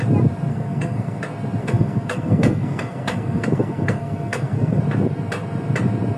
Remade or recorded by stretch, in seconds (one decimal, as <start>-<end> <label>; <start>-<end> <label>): 0.0-0.5 recorded; 0.5-1.2 remade; 1.2-1.6 recorded; 1.6-4.8 remade; 4.8-6.2 recorded